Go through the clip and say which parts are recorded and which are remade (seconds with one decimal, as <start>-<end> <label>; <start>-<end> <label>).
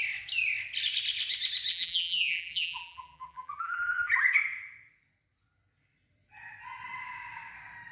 0.0-1.7 recorded; 1.7-4.1 remade; 4.1-7.9 recorded